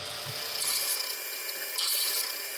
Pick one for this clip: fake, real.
real